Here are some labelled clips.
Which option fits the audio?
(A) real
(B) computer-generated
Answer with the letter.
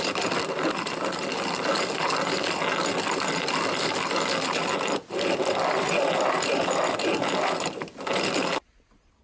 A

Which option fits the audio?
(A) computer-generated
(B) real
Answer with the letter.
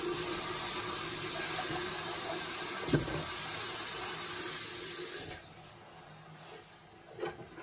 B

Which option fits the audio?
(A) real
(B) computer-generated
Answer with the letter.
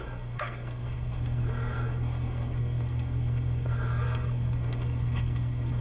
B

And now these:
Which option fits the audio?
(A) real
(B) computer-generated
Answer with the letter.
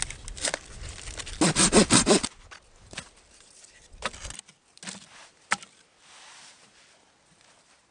A